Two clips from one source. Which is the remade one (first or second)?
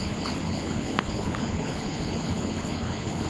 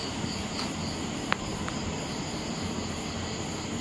first